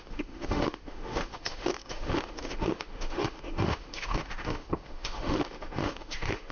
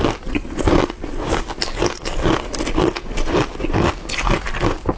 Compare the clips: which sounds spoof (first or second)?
first